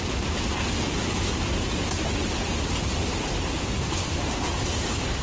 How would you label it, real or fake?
real